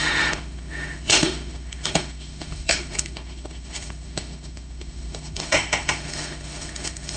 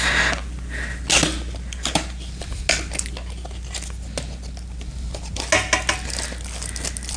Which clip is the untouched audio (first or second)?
second